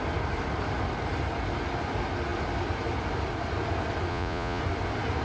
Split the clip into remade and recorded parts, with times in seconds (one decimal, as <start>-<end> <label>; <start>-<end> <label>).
0.0-4.1 recorded; 4.1-4.6 remade; 4.6-5.2 recorded